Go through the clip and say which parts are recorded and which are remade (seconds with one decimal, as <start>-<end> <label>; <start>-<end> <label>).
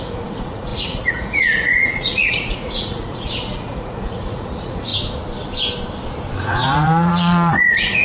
0.0-4.9 remade; 4.9-6.4 recorded; 6.4-8.0 remade